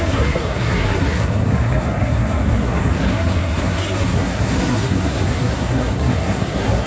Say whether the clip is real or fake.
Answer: fake